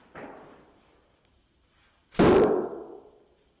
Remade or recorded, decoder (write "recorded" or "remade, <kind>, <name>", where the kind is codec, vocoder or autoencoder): recorded